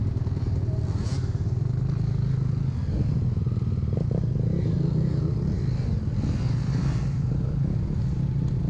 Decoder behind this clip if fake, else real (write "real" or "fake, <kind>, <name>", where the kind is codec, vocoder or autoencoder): real